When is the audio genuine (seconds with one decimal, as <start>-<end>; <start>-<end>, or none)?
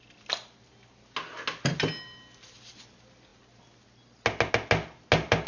0.0-5.5